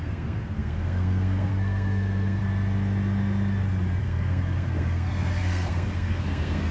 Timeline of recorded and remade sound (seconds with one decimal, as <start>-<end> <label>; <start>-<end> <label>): 0.0-2.4 remade; 2.4-4.0 recorded; 4.0-6.7 remade